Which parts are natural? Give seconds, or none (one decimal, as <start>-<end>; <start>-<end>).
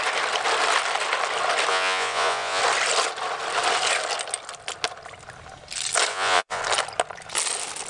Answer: 0.0-1.7; 2.6-6.1; 6.6-7.9